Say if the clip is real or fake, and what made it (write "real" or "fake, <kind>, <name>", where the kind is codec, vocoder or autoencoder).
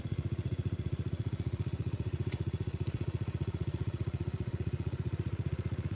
fake, vocoder, Vocos